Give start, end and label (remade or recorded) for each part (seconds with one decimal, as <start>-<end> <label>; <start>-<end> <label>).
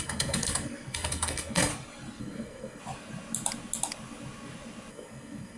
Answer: 0.0-1.7 remade; 1.7-2.2 recorded; 2.2-2.8 remade; 2.8-4.9 recorded; 4.9-5.6 remade